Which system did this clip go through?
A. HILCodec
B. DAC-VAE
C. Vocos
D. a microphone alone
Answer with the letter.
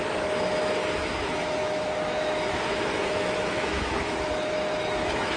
B